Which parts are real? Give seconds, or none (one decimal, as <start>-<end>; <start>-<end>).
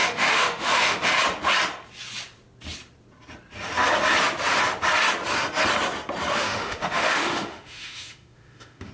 1.2-6.3